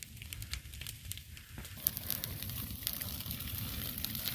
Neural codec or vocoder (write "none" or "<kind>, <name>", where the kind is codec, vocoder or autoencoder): vocoder, BigVGAN v2